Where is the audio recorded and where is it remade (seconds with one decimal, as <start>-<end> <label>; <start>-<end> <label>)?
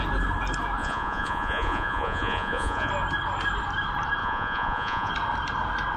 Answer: 0.0-0.8 recorded; 0.8-2.9 remade; 2.9-4.2 recorded; 4.2-5.1 remade; 5.1-6.0 recorded